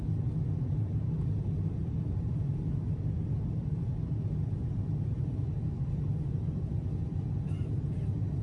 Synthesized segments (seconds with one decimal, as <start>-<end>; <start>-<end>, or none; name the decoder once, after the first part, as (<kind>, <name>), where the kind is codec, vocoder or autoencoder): 1.8-2.4 (vocoder, BigVGAN v2)